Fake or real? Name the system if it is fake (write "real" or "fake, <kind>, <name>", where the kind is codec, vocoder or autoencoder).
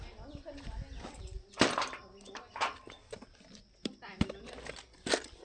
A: real